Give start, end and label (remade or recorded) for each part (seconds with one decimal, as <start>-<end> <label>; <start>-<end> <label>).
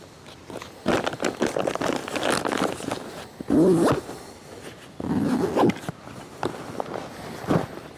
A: 0.0-8.0 recorded